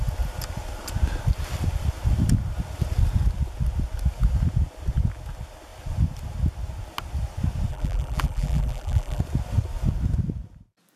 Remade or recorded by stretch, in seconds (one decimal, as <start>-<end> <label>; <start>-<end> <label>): 0.0-7.7 recorded; 7.7-9.2 remade; 9.2-11.0 recorded